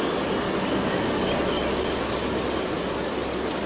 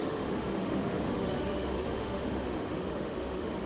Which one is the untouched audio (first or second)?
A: first